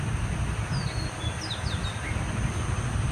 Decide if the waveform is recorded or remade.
recorded